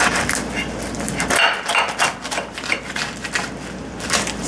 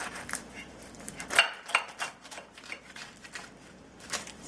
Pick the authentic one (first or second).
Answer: first